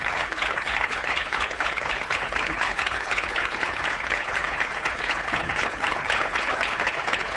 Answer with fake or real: fake